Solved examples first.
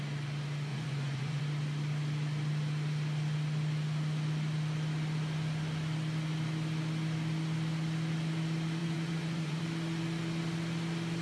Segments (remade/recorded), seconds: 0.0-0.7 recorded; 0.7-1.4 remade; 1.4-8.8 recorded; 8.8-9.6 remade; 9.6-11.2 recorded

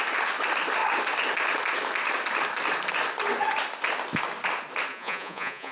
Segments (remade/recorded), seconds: 0.0-4.9 recorded; 4.9-5.7 remade

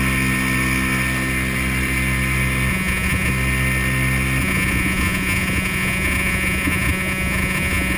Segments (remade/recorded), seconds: 0.0-2.7 recorded; 2.7-3.3 remade; 3.3-4.4 recorded; 4.4-8.0 remade

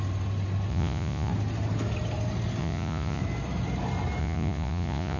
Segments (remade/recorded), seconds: 0.0-0.7 recorded; 0.7-1.3 remade; 1.3-2.6 recorded; 2.6-3.2 remade; 3.2-4.2 recorded; 4.2-5.2 remade

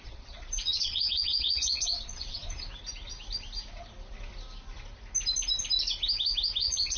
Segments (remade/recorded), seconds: 0.0-2.4 remade; 2.4-6.6 recorded; 6.6-7.0 remade

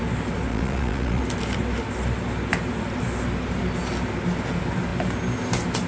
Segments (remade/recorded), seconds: 0.0-0.5 recorded; 0.5-1.2 remade; 1.2-5.9 recorded

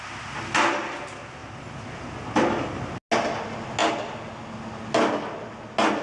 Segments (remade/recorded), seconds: 0.0-6.0 recorded